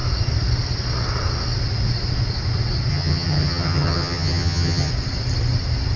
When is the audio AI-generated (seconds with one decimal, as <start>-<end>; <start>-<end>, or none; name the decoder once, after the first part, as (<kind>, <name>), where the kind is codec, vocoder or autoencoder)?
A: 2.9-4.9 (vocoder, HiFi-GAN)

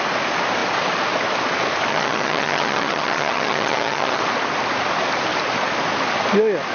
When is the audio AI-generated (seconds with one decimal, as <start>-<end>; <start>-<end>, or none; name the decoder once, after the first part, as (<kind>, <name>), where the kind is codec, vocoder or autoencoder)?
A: 1.9-4.2 (vocoder, HiFi-GAN)

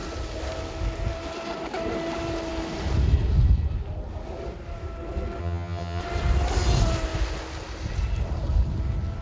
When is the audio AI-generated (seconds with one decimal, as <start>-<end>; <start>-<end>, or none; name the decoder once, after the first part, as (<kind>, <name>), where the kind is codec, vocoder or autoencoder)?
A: 5.4-6.0 (vocoder, HiFi-GAN)